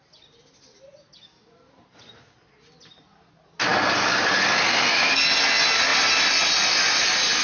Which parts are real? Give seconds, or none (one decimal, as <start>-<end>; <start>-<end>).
0.0-7.4